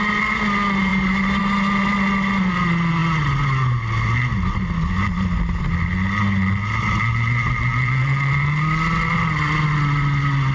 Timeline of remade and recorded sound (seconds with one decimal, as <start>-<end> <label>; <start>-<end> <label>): 0.0-10.5 recorded